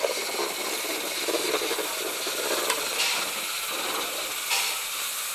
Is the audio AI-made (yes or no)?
no